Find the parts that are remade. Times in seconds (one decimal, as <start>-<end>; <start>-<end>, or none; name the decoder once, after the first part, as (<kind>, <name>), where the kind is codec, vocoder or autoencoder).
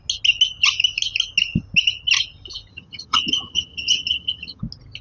2.7-4.6 (vocoder, HiFi-GAN)